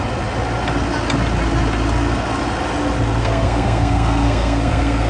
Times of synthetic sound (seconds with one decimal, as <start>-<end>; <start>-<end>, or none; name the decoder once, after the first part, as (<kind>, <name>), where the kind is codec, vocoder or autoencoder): 3.2-5.1 (codec, SNAC)